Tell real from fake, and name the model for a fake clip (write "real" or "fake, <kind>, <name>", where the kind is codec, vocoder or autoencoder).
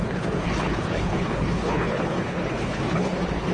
fake, codec, HILCodec